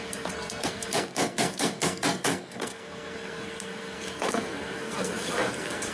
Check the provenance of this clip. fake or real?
fake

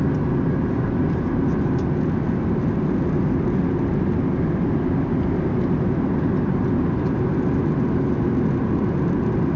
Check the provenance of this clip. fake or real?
real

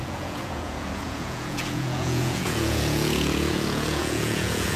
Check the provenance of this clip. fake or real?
fake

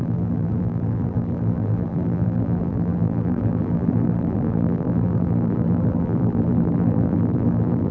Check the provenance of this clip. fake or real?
fake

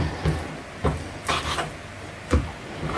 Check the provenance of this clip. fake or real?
real